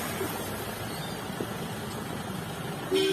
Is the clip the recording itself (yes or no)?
yes